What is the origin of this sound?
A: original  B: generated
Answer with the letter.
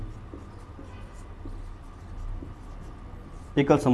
A